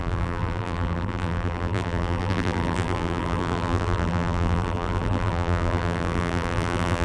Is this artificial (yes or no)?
yes